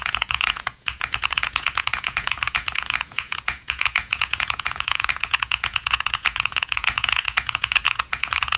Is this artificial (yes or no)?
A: yes